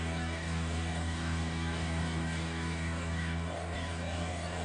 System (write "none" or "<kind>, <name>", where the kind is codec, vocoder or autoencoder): codec, DAC